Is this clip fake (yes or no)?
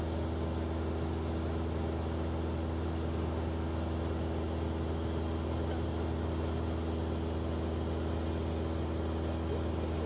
no